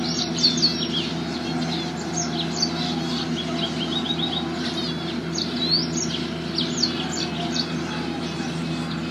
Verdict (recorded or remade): recorded